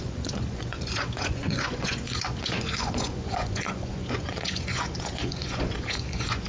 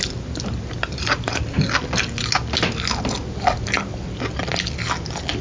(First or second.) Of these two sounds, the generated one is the first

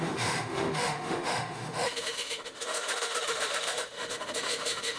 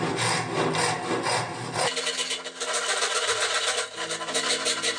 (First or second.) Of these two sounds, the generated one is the first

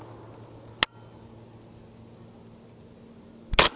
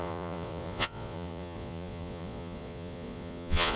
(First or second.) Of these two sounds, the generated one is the second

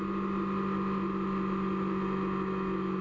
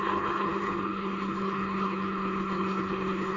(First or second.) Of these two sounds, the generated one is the second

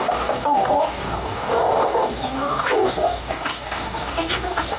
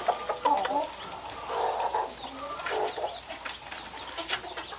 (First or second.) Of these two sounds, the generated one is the first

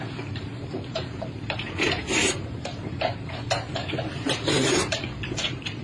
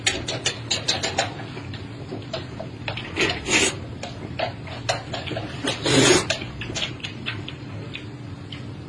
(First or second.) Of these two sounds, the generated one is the first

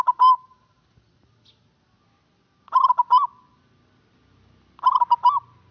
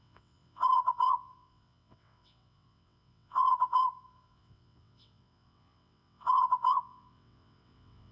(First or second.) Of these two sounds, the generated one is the second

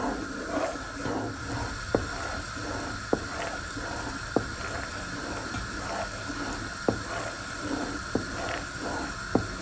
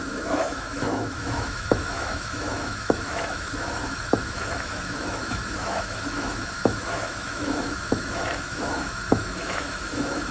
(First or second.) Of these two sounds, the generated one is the second